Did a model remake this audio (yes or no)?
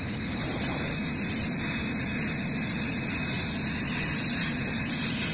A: no